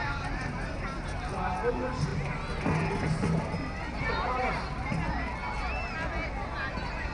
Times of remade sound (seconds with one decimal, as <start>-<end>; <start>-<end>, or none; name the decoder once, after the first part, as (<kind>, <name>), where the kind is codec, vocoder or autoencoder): none